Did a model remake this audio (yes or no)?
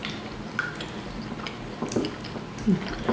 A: no